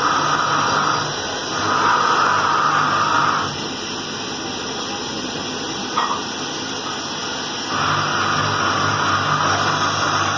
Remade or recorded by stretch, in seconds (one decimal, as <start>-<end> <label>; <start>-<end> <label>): 0.0-10.4 recorded